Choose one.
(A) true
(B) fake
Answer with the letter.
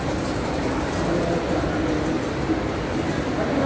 A